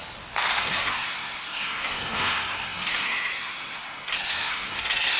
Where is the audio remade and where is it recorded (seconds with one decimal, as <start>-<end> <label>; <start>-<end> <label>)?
0.0-0.6 recorded; 0.6-5.2 remade